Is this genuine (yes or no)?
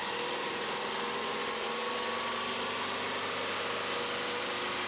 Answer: yes